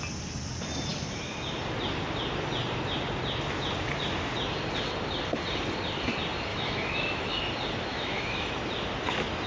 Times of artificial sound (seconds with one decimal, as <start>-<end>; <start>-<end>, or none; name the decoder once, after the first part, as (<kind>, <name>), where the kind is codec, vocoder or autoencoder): 6.5-7.4 (autoencoder, DAC-VAE); 7.9-8.5